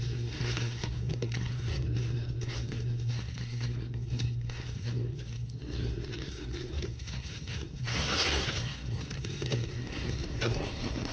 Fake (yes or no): yes